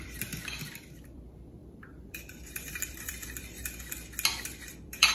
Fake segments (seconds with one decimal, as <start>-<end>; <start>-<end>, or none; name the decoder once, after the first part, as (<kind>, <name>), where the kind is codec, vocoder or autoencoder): 0.0-3.6 (vocoder, BigVGAN v2); 4.6-5.1